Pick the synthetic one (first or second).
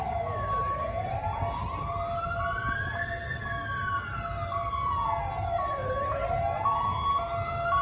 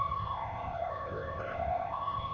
second